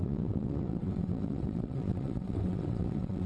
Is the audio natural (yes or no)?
no